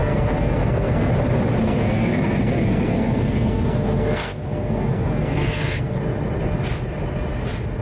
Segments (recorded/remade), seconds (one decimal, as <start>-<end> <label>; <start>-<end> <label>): 0.0-1.1 remade; 1.1-1.6 recorded; 1.6-6.0 remade; 6.0-7.8 recorded